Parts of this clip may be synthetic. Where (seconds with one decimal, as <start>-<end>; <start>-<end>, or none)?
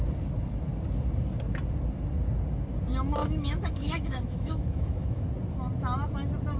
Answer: 3.2-5.2